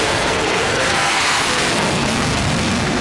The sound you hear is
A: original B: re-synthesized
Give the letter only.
B